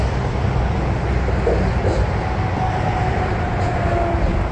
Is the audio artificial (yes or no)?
no